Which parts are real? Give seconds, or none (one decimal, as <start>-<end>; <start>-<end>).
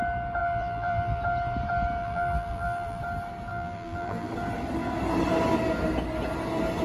0.0-0.4; 1.2-2.0; 3.0-3.5; 4.3-6.8